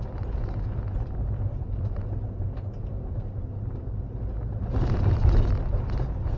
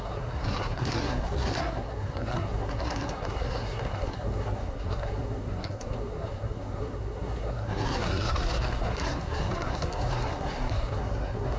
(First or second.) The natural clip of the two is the first